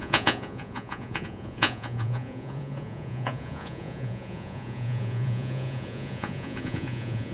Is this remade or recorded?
remade